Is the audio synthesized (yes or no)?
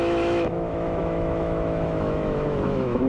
yes